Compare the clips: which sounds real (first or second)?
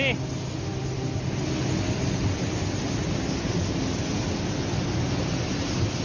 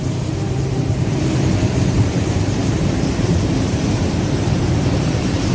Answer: first